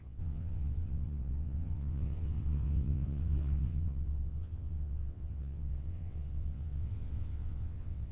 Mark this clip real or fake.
fake